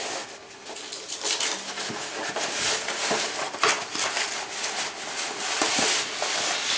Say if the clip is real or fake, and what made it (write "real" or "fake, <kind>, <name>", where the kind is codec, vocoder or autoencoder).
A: real